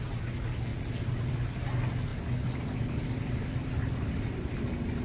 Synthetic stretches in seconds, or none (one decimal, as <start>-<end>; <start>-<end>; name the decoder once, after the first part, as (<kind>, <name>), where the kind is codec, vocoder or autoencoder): none